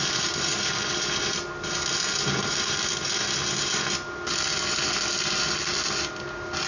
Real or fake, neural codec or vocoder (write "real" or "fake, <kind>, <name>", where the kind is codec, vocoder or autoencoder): real